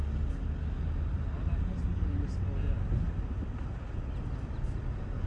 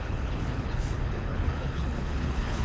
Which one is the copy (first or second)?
second